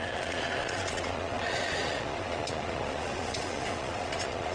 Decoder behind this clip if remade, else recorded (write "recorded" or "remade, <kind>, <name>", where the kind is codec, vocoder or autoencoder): remade, vocoder, Vocos